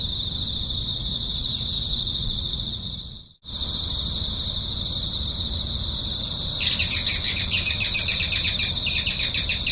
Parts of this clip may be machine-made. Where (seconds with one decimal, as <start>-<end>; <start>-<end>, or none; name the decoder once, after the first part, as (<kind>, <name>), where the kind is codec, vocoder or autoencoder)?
0.9-3.2 (vocoder, Vocos)